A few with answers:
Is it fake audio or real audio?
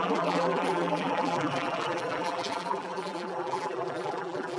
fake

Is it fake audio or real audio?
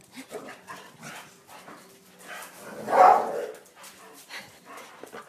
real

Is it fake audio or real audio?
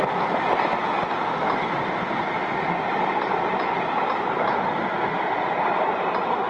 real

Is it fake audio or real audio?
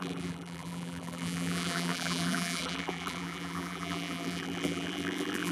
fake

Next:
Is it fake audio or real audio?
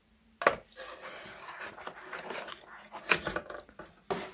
real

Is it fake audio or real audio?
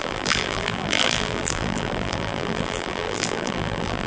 fake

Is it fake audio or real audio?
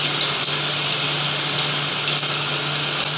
real